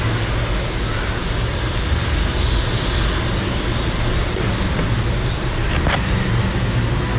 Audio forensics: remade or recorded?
recorded